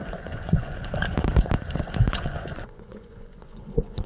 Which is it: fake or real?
fake